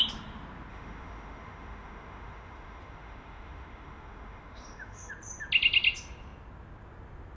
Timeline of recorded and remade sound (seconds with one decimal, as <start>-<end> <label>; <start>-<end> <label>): 0.0-0.7 recorded; 0.7-5.1 remade; 5.1-7.4 recorded